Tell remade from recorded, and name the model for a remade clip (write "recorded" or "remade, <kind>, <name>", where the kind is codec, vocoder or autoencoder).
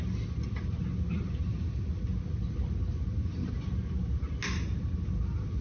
recorded